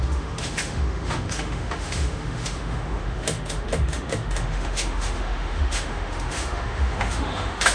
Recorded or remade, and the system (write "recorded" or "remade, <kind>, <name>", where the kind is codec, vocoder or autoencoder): remade, autoencoder, DAC-VAE